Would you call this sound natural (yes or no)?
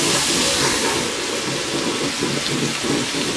yes